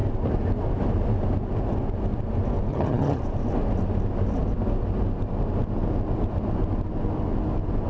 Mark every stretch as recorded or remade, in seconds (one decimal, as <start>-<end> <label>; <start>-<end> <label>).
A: 0.0-2.7 recorded; 2.7-3.2 remade; 3.2-7.9 recorded